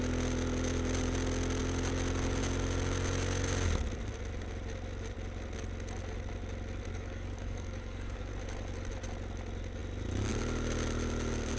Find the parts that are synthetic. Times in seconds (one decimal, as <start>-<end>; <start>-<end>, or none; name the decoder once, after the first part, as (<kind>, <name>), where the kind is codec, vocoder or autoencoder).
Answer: 6.9-8.3 (codec, DAC)